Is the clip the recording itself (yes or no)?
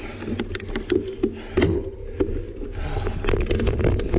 yes